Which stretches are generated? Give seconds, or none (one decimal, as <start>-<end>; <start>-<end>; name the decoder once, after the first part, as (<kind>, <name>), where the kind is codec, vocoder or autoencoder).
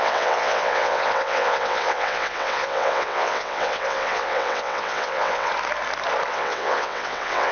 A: 0.0-5.5 (vocoder, WaveNeXt); 6.3-7.5